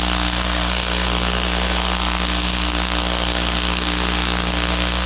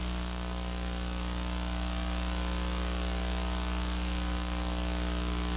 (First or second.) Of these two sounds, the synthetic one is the first